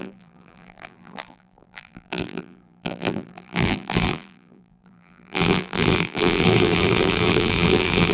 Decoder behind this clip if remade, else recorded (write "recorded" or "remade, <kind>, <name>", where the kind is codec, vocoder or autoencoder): remade, vocoder, BigVGAN v2